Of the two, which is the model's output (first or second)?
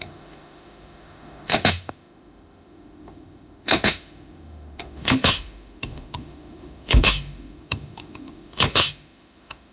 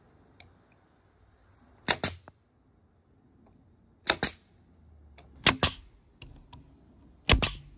first